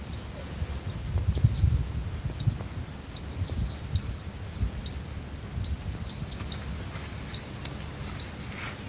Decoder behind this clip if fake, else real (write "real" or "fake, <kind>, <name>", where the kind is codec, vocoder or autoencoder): real